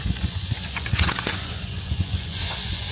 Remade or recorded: remade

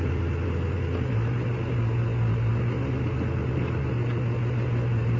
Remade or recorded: recorded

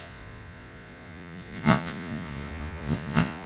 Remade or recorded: remade